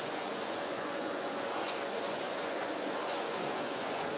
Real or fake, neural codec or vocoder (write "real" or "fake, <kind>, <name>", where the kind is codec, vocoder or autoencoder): fake, vocoder, Vocos